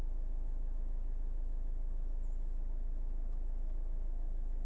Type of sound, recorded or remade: recorded